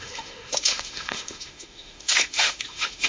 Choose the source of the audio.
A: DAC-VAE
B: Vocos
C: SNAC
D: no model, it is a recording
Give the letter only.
A